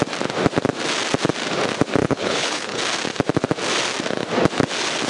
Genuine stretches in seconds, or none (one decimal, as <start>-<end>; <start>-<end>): 0.0-2.0; 2.8-5.1